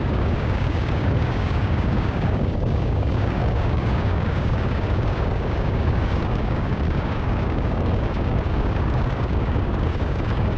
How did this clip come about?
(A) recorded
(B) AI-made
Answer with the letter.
B